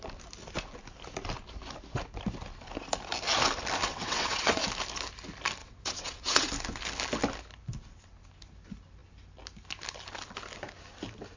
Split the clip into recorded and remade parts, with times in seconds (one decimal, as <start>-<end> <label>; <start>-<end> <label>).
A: 0.0-3.9 recorded; 3.9-4.6 remade; 4.6-5.6 recorded; 5.6-6.5 remade; 6.5-11.4 recorded